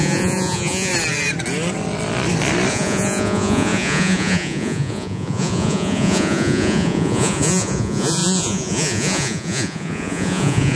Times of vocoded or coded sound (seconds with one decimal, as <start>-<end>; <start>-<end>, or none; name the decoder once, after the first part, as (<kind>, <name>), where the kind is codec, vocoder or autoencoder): 0.0-0.9 (vocoder, Vocos); 2.7-10.8